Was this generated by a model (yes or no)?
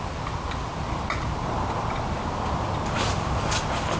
no